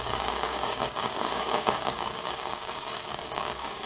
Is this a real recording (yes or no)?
no